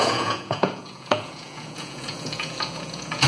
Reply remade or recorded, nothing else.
remade